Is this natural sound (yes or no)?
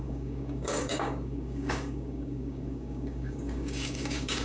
no